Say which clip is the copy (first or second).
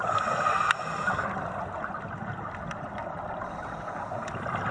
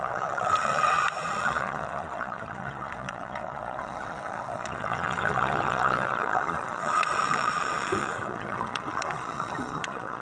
second